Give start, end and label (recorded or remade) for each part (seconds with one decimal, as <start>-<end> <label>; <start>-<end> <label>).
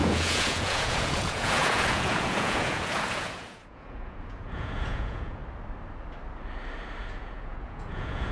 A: 0.0-5.4 remade; 5.4-7.0 recorded; 7.0-8.3 remade